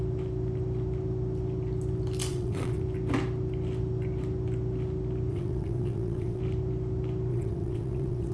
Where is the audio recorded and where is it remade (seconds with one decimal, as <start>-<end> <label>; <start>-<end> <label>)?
0.0-2.3 recorded; 2.3-2.8 remade; 2.8-5.3 recorded; 5.3-6.4 remade; 6.4-7.3 recorded; 7.3-8.3 remade